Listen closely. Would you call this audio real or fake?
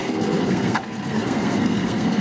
fake